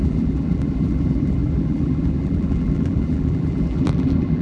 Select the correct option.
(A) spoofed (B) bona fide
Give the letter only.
A